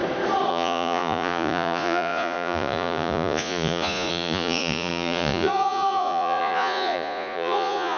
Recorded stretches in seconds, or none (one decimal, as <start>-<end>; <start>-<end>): 0.0-0.5

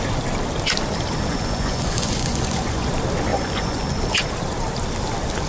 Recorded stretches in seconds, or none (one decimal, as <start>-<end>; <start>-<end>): 0.0-1.3; 2.9-3.3; 3.9-5.5

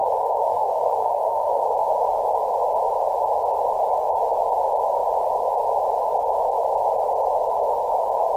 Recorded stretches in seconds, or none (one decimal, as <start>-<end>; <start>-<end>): 1.7-8.4

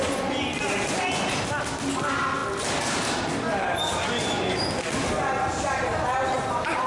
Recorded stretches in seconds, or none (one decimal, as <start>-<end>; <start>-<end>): 0.0-6.9

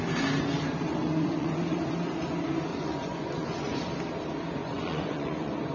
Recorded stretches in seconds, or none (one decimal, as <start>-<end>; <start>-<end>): 0.0-1.0; 1.8-2.7; 3.9-4.6